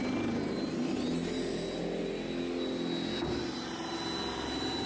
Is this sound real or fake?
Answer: real